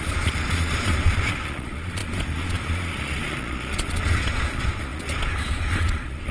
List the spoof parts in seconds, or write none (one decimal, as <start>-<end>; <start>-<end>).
0.0-6.3